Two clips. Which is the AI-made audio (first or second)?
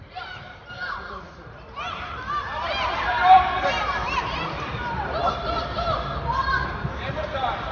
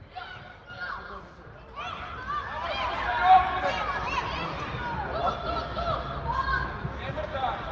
first